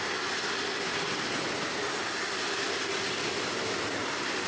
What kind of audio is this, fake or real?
real